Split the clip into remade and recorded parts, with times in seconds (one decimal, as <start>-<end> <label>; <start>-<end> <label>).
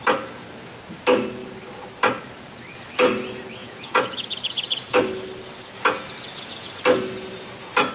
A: 0.0-3.6 recorded; 3.6-5.0 remade; 5.0-6.3 recorded; 6.3-6.8 remade; 6.8-7.9 recorded